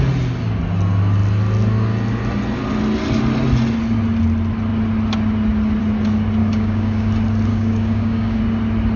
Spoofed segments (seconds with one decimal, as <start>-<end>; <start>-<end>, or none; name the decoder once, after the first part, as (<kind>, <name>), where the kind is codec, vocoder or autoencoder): 6.4-7.1 (codec, DAC); 7.5-8.4